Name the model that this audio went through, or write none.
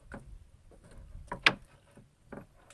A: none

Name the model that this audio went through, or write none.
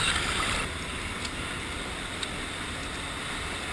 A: none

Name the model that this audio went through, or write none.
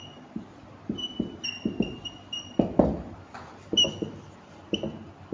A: none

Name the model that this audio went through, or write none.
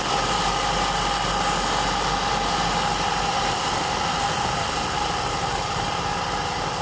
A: none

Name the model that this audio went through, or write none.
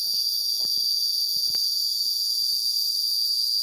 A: vocoder, Vocos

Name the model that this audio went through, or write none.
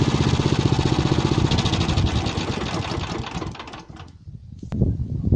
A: none